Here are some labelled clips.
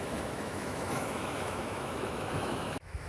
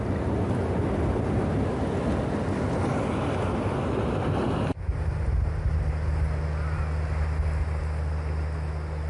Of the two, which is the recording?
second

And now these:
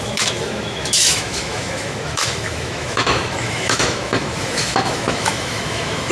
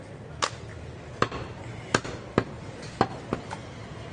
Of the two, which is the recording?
second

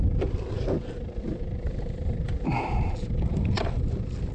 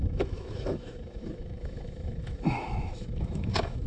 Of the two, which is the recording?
first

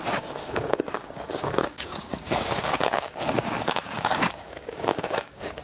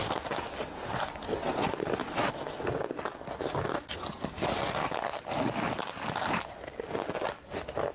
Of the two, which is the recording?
second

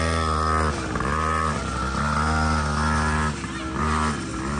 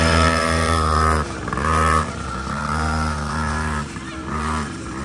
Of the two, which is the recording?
first